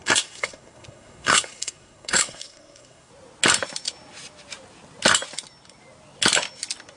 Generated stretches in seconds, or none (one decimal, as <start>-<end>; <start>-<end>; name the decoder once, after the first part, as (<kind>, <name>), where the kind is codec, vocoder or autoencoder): 0.0-3.1 (codec, SNAC)